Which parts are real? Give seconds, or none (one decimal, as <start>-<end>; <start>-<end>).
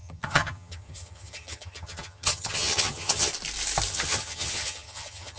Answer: 3.3-3.9